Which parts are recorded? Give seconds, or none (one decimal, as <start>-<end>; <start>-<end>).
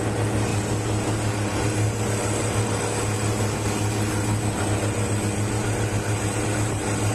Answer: 0.0-7.1